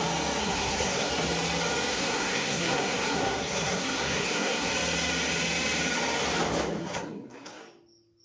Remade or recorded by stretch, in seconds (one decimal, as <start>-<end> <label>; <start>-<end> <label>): 0.0-0.4 recorded; 0.4-1.1 remade; 1.1-1.9 recorded; 1.9-4.7 remade; 4.7-6.8 recorded; 6.8-7.6 remade; 7.6-8.2 recorded